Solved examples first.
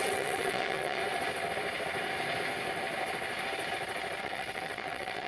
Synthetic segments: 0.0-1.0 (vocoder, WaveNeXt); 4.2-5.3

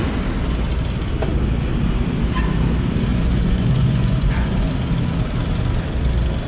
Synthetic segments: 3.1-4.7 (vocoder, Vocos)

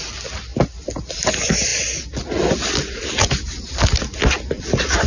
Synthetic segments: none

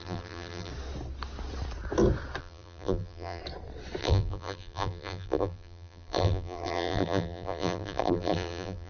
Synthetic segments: 0.0-0.7 (vocoder, BigVGAN v2); 2.4-3.4; 4.0-8.9

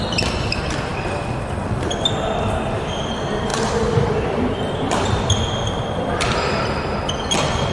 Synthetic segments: 0.0-7.7 (vocoder, BigVGAN v2)

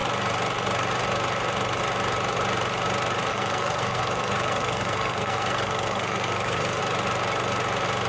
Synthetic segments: 3.3-6.8 (codec, SNAC)

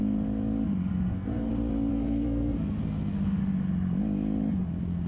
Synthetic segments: 0.9-1.5 (codec, SNAC); 1.9-3.4

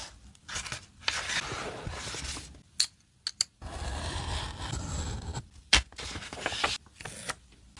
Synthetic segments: none